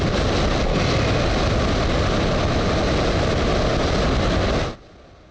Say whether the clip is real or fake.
real